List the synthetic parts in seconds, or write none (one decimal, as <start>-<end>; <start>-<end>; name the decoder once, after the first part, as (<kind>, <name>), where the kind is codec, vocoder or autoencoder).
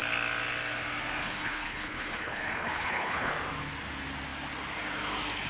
1.2-3.3 (codec, HILCodec)